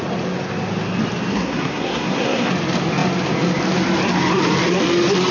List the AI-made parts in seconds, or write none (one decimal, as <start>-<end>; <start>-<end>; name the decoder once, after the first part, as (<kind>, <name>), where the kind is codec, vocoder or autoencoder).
1.3-2.5 (codec, SNAC)